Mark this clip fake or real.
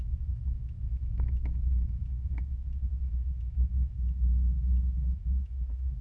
fake